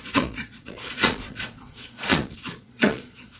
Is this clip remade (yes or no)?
yes